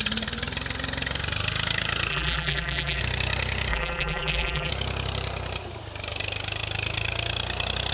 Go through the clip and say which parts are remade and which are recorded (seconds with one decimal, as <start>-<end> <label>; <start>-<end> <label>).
0.0-2.1 recorded; 2.1-3.0 remade; 3.0-3.7 recorded; 3.7-4.7 remade; 4.7-7.9 recorded